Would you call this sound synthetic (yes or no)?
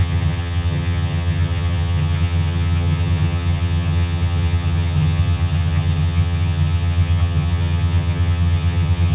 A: yes